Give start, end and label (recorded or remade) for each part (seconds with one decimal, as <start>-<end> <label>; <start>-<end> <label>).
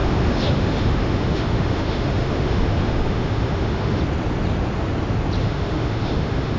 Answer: 0.0-4.0 remade; 4.0-5.4 recorded; 5.4-6.6 remade